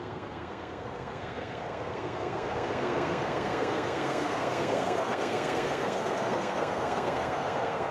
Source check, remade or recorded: remade